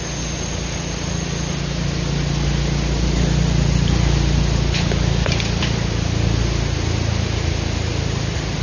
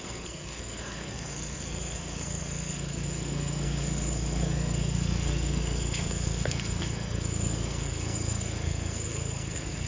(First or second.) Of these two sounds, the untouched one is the first